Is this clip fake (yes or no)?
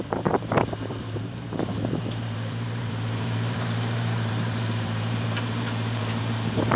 yes